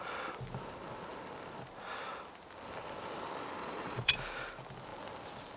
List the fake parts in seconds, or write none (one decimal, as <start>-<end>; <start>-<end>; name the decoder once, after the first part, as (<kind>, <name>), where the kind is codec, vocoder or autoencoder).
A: 3.6-4.1 (vocoder, Vocos)